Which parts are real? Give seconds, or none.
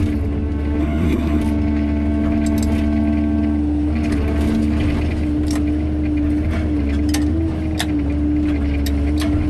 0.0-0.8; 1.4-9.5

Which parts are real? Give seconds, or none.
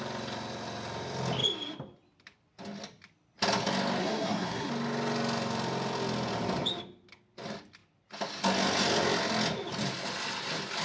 0.0-4.0; 4.7-10.8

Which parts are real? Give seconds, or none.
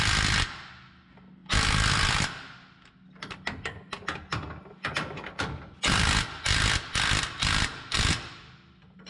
0.0-9.1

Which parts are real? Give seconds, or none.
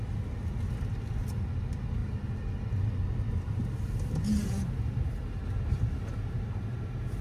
0.0-7.2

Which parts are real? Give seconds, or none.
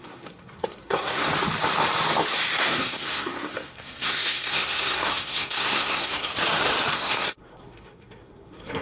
1.3-2.6; 6.3-6.9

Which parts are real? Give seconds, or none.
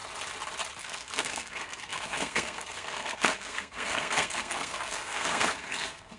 0.0-0.8